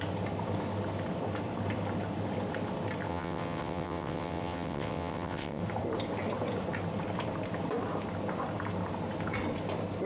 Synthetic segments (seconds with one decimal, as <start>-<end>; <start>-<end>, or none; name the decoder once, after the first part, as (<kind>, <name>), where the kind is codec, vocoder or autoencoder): 3.1-5.6 (vocoder, WaveNeXt)